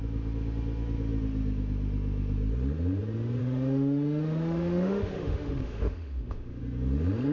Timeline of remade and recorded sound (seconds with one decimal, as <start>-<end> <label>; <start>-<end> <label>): 0.0-3.4 recorded; 3.4-6.6 remade; 6.6-7.3 recorded